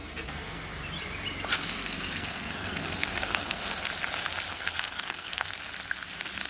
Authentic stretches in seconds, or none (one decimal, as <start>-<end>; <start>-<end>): 0.6-1.5; 3.9-4.5; 5.5-6.5